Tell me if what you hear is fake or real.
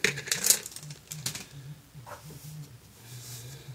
real